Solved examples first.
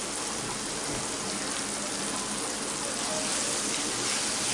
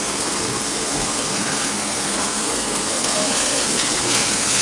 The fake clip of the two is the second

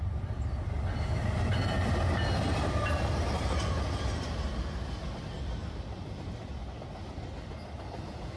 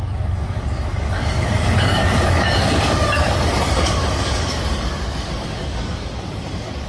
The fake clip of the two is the second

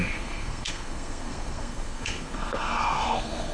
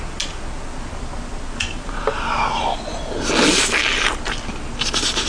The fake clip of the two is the first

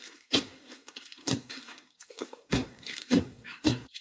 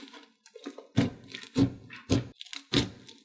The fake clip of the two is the first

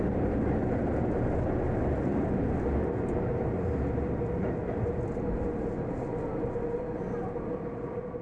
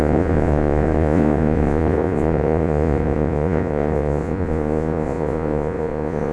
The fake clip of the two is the second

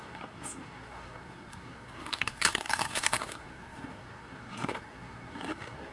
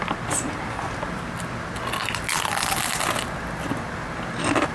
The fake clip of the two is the first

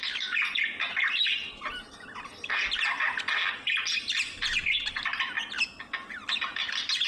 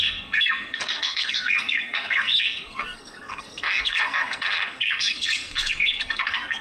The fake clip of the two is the second